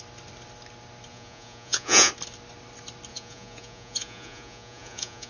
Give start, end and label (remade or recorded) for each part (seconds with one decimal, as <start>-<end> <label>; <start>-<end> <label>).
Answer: 0.0-1.1 recorded; 1.1-2.1 remade; 2.1-3.1 recorded; 3.1-5.3 remade